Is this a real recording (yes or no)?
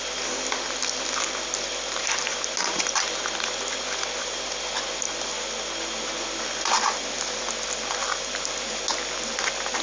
yes